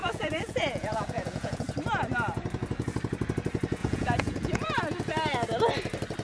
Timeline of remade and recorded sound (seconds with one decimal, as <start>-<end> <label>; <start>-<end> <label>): 0.0-1.6 remade; 1.6-3.8 recorded; 3.8-4.8 remade; 4.8-6.2 recorded